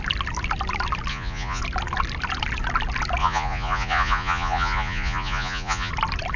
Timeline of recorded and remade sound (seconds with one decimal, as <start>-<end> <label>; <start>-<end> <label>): 0.0-1.1 recorded; 1.1-1.6 remade; 1.6-3.2 recorded; 3.2-5.9 remade; 5.9-6.4 recorded